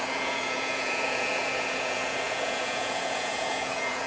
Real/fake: fake